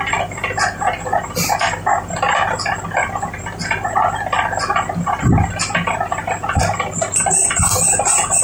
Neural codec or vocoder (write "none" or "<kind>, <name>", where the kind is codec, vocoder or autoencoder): none